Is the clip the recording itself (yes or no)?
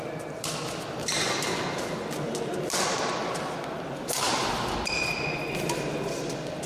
yes